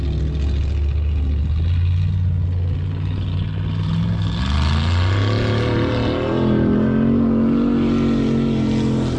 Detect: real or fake real